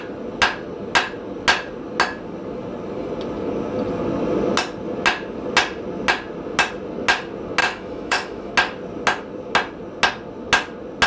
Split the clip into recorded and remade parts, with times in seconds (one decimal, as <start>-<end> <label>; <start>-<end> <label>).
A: 0.0-7.6 recorded; 7.6-8.5 remade; 8.5-11.1 recorded